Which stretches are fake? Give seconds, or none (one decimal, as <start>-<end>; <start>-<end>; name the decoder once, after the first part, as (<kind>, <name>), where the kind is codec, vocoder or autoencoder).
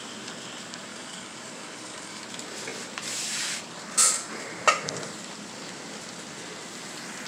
0.9-2.2 (codec, DAC)